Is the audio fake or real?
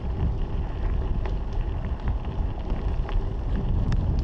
real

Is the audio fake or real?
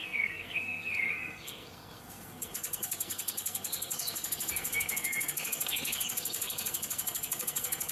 fake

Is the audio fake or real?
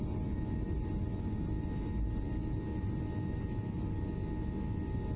real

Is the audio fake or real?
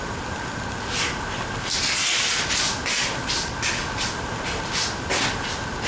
real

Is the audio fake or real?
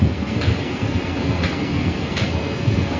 fake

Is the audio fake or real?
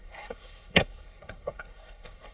fake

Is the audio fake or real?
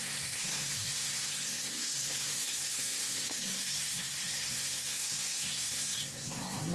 fake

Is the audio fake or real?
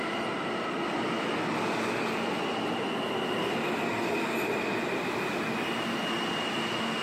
real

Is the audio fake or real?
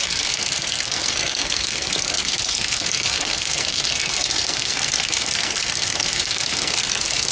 fake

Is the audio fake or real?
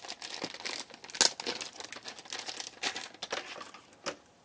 real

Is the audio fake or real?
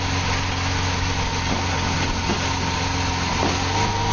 real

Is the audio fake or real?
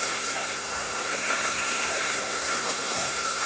fake